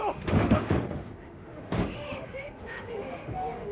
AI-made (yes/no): yes